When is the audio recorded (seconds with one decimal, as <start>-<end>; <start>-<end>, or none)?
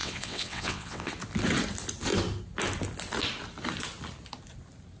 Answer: 1.1-5.0